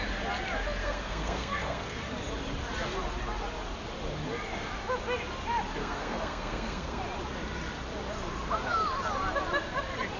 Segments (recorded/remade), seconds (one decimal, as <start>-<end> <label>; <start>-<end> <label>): 0.0-0.8 recorded; 0.8-2.0 remade; 2.0-5.8 recorded; 5.8-7.0 remade; 7.0-10.2 recorded